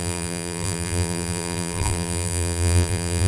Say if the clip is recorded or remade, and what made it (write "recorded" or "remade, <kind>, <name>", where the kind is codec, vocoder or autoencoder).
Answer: remade, vocoder, BigVGAN v2